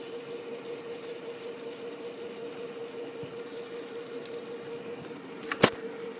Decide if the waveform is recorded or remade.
recorded